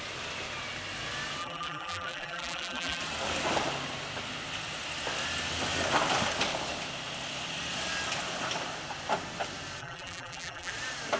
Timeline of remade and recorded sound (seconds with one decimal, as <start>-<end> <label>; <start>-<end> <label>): 0.0-1.4 recorded; 1.4-3.0 remade; 3.0-9.8 recorded; 9.8-10.7 remade; 10.7-11.2 recorded